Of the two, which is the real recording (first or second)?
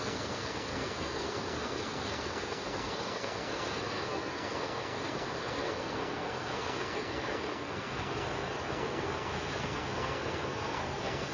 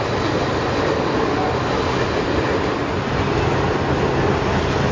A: second